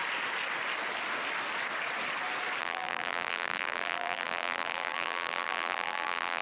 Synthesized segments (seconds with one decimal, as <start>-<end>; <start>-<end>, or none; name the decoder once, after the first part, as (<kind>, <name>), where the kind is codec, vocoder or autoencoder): 2.6-6.4 (vocoder, BigVGAN v2)